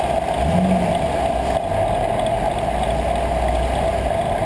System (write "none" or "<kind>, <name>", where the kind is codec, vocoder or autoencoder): none